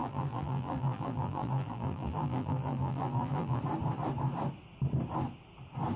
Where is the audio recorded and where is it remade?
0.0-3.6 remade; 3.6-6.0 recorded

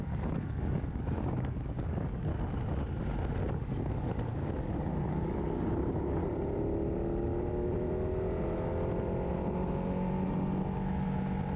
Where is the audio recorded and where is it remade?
0.0-2.3 remade; 2.3-3.5 recorded; 3.5-6.2 remade; 6.2-11.6 recorded